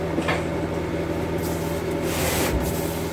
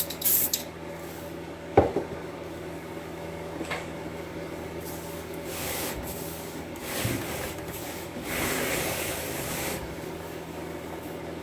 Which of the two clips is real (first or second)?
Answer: first